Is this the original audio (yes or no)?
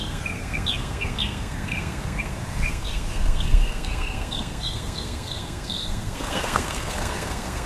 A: no